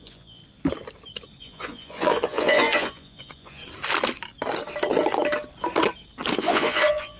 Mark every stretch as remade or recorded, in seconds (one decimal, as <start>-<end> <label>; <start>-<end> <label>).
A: 0.0-0.4 remade; 0.4-1.4 recorded; 1.4-3.6 remade; 3.6-6.4 recorded; 6.4-7.2 remade